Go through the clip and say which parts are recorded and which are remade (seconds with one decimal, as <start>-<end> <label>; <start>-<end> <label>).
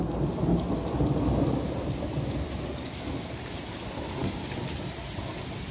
0.0-5.7 recorded